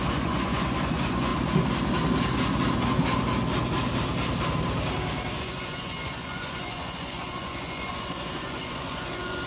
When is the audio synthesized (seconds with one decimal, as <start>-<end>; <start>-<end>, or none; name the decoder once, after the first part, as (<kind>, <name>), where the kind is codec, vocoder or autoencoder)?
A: 0.0-1.3 (vocoder, Vocos); 5.4-9.5